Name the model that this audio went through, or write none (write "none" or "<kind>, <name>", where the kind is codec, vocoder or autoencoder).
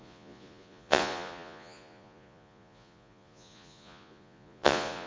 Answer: vocoder, Vocos